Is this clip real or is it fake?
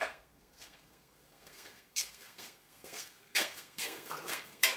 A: fake